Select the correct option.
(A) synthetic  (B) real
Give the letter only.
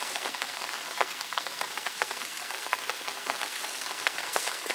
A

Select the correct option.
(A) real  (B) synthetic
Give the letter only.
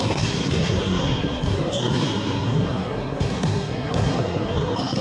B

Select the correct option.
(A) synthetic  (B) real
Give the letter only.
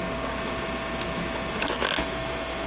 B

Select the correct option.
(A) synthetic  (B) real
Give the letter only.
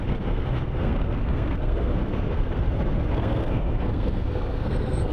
A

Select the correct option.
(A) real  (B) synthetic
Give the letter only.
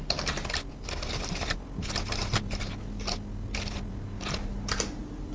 A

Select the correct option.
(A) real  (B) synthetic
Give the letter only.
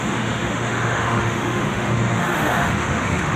B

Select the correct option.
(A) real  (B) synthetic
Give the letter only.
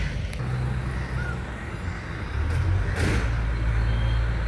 A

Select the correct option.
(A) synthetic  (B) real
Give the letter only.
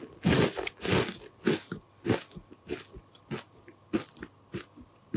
B